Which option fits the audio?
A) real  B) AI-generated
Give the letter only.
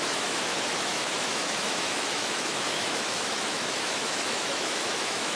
B